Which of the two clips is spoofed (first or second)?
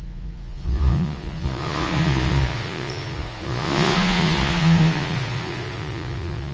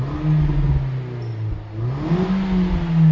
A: first